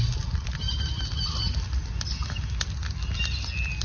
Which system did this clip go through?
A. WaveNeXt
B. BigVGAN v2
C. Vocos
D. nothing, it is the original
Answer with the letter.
D